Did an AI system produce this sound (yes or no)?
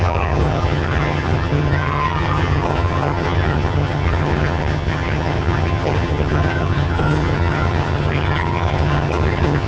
yes